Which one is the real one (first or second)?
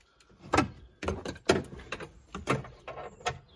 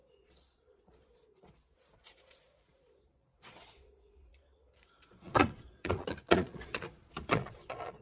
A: first